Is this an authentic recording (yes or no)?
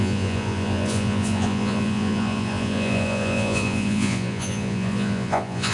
no